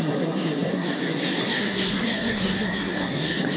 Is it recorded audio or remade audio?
remade